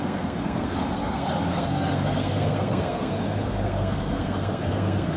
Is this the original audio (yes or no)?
no